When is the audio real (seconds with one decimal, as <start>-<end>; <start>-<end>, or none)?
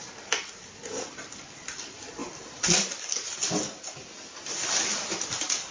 0.0-5.7